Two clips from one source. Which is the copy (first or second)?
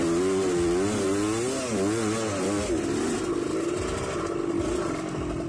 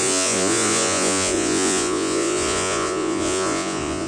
second